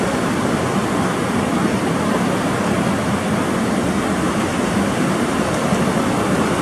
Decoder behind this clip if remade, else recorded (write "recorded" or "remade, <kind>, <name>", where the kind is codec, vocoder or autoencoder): recorded